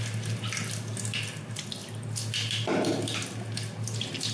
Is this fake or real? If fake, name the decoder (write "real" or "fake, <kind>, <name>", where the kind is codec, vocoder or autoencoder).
real